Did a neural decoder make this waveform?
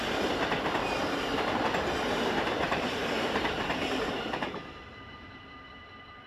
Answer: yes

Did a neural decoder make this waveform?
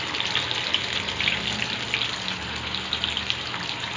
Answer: no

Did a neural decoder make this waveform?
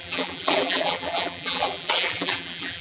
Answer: yes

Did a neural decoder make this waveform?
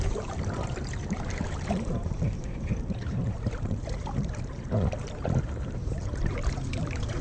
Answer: yes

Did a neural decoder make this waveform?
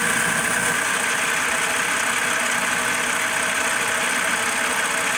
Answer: no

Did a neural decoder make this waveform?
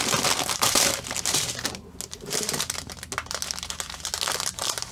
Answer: no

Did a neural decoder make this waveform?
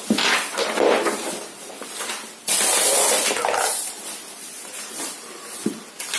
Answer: yes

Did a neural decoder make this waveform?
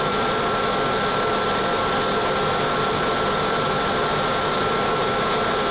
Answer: no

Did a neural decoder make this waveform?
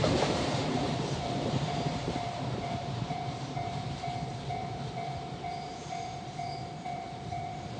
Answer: yes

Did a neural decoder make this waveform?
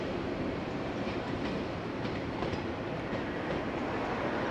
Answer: yes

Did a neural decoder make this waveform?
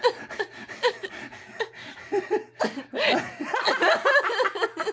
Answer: no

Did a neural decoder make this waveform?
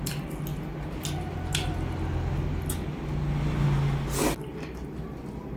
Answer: no